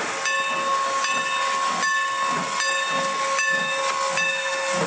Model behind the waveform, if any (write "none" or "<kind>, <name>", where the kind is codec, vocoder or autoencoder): none